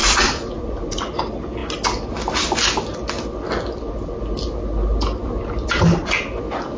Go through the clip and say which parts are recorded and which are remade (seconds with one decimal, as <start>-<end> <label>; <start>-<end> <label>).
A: 0.0-0.6 remade; 0.6-6.8 recorded

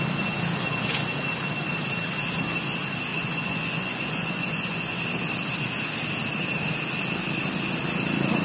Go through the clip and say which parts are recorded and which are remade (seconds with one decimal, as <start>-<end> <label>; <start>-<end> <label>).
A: 0.0-3.1 recorded; 3.1-5.0 remade; 5.0-8.4 recorded

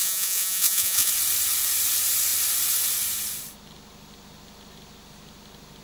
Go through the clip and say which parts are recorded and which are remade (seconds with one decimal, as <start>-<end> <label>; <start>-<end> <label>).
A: 0.0-1.1 remade; 1.1-5.8 recorded

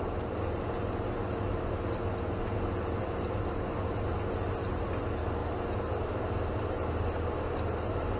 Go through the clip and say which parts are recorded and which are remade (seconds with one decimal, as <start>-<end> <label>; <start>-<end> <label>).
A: 0.0-8.2 recorded

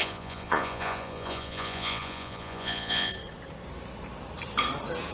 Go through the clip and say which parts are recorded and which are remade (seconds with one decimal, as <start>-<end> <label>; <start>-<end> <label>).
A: 0.0-3.1 remade; 3.1-5.1 recorded